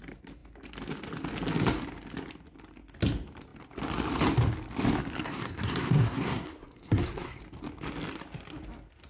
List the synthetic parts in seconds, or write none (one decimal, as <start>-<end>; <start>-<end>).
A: 5.2-7.4